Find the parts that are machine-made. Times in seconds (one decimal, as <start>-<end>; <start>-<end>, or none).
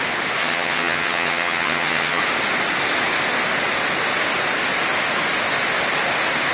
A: 0.4-2.2